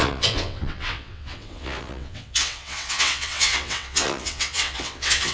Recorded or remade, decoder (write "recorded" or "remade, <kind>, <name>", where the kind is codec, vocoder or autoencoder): remade, vocoder, WaveNeXt